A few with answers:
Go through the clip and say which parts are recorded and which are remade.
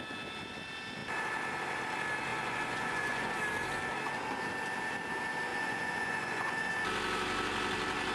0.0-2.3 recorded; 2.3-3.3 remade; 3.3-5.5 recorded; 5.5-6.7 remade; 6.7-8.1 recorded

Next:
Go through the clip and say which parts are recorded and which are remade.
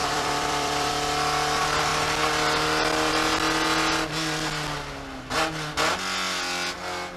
0.0-0.9 remade; 0.9-7.2 recorded